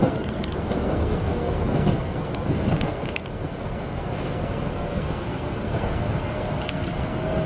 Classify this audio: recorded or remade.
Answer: remade